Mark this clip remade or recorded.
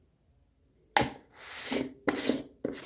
recorded